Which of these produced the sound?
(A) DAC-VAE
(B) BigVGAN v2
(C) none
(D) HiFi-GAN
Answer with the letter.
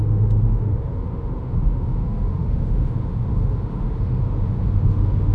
A